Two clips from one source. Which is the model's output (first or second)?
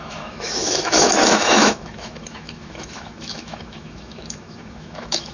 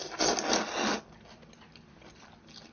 first